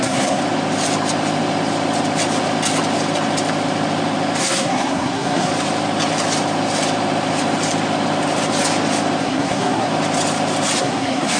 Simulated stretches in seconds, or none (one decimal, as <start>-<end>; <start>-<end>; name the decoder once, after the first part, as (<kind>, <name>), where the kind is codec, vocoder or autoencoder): 0.0-0.4 (codec, SNAC); 4.4-5.5; 9.2-9.9; 10.8-11.4